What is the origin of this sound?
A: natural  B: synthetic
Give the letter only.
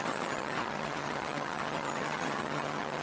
B